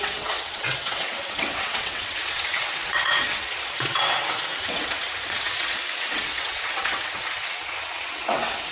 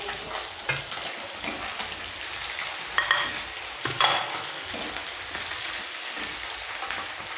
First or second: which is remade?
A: first